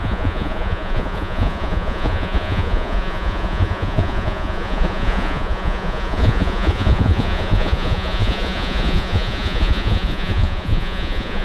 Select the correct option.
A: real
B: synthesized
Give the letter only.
B